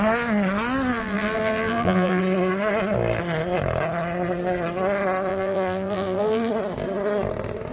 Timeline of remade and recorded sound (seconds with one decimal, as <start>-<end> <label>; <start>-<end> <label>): 0.0-0.9 recorded; 0.9-2.2 remade; 2.2-5.3 recorded; 5.3-6.5 remade; 6.5-7.7 recorded